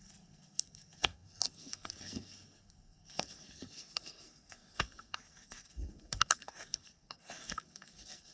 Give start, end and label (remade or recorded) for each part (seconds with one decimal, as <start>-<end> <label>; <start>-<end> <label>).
0.0-8.3 remade